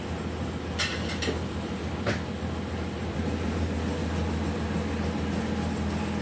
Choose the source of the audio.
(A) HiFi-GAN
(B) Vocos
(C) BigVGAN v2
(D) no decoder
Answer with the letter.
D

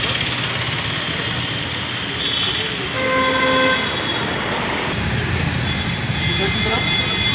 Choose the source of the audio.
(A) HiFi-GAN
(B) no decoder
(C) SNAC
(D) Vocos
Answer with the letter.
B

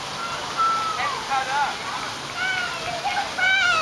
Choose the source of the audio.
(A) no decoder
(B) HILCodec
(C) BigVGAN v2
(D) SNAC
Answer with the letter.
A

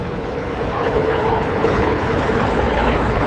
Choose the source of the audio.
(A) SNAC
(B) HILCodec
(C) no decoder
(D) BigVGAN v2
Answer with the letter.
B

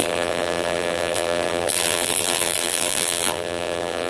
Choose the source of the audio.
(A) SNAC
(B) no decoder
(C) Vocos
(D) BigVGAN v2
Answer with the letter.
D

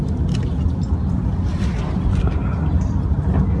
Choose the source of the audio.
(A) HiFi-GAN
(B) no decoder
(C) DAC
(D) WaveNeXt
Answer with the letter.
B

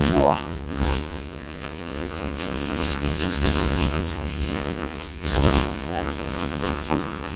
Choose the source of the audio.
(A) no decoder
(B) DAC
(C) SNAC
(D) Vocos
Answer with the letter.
D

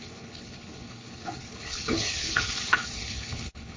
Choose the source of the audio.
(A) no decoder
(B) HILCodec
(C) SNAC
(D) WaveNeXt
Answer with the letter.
B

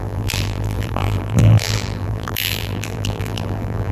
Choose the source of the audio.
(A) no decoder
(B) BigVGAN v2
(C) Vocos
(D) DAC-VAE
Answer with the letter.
B